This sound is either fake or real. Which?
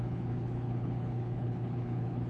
fake